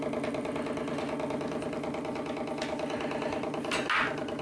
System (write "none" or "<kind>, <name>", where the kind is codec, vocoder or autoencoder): none